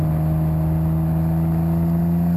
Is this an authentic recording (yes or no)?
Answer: yes